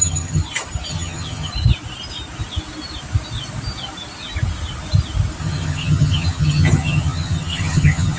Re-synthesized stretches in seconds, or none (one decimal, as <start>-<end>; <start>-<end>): 0.0-0.4; 0.9-1.5; 5.4-8.2